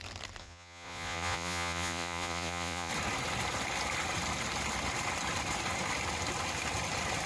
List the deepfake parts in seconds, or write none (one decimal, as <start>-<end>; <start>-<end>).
0.4-2.9

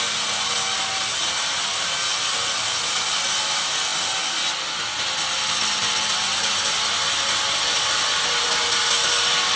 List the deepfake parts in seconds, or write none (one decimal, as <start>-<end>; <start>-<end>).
none

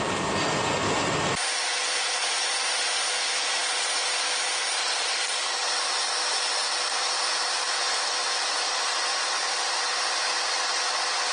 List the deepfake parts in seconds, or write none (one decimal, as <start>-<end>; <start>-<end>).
9.1-11.3

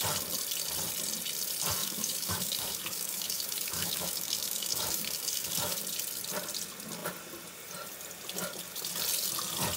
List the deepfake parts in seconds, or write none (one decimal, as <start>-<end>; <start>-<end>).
1.8-5.8